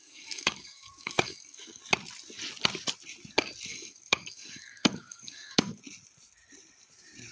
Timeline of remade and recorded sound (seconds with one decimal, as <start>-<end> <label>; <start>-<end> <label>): 0.0-1.8 remade; 1.8-3.7 recorded; 3.7-5.8 remade; 5.8-7.3 recorded